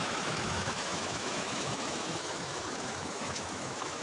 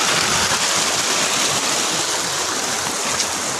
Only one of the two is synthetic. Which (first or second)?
first